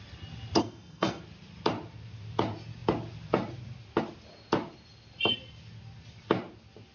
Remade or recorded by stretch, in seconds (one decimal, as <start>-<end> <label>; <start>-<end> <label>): 0.0-0.6 recorded; 0.6-1.2 remade; 1.2-6.9 recorded